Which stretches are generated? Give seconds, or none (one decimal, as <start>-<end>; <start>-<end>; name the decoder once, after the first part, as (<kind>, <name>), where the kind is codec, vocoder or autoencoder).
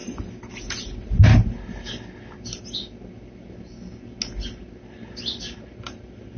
none